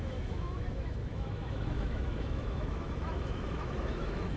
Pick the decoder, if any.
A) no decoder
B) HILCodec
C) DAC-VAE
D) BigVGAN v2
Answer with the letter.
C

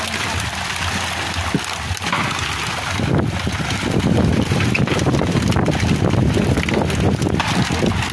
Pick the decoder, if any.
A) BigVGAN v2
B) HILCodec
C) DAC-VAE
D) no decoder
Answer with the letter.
D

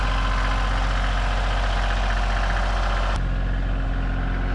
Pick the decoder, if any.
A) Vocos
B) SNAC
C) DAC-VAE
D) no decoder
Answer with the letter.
D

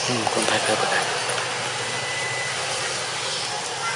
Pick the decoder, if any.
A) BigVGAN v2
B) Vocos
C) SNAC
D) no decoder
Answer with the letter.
D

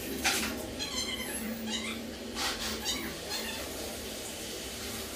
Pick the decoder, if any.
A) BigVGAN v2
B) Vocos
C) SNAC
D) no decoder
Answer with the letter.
A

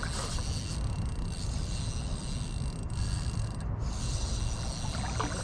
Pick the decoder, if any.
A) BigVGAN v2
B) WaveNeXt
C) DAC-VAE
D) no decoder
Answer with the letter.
D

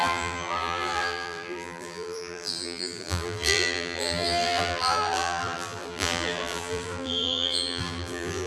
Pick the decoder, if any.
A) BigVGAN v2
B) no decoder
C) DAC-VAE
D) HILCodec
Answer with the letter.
A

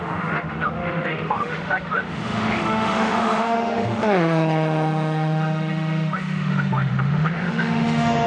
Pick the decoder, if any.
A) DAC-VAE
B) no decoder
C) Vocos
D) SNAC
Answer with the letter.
A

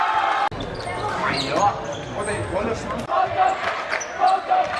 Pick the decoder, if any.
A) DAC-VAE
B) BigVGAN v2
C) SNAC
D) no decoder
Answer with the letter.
D